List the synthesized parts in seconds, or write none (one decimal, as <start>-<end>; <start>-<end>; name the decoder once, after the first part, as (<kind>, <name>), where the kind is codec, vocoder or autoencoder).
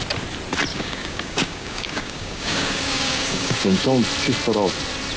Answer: 0.7-3.8 (codec, DAC)